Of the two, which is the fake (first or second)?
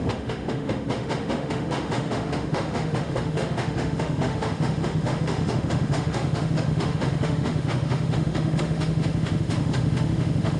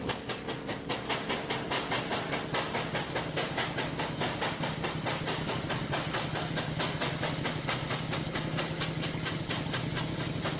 first